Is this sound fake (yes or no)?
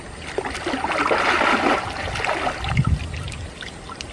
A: no